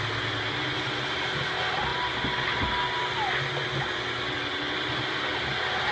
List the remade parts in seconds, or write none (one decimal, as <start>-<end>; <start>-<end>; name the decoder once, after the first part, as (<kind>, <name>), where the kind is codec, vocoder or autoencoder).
none